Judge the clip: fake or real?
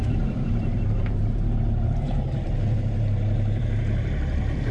fake